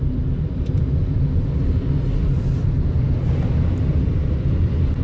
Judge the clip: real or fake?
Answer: fake